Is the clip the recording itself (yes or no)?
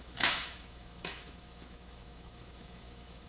no